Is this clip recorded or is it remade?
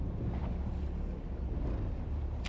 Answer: recorded